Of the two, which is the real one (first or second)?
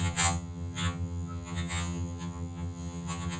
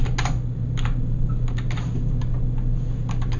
second